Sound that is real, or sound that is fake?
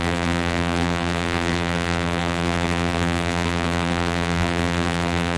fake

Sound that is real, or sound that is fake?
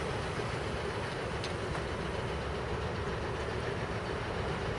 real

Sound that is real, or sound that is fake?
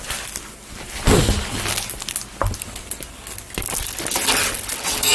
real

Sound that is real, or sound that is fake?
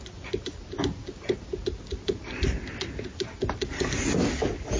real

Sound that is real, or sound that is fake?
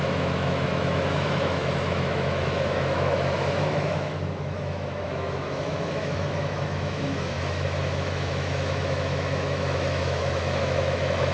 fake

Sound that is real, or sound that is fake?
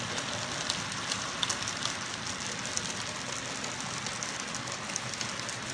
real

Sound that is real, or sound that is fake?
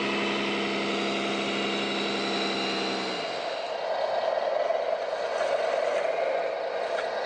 real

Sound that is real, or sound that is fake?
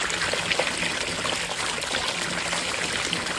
real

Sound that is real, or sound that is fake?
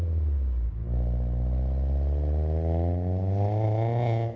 real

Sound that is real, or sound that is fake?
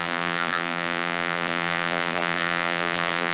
fake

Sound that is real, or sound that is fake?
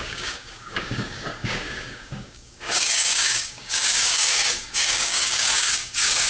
fake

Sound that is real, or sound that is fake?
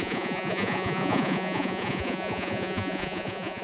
fake